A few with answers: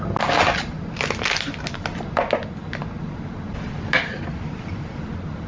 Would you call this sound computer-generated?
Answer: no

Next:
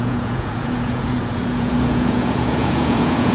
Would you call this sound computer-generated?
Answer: yes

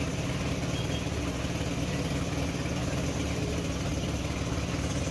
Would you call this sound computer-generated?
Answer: no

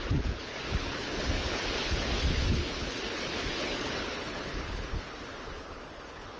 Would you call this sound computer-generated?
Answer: yes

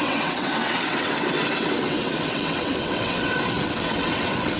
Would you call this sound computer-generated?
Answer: yes